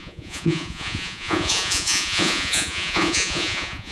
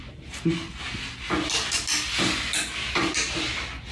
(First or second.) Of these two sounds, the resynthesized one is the first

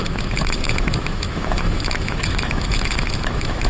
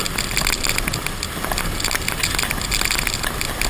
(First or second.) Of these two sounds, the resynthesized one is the first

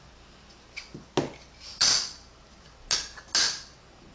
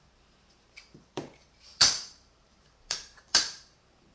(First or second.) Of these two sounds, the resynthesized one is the second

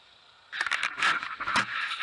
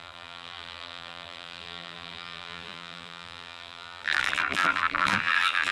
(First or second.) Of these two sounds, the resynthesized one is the second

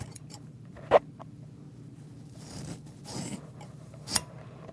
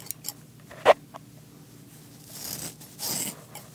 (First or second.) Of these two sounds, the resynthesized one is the first